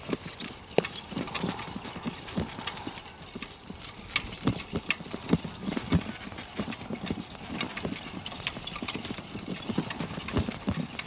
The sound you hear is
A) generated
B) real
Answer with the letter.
B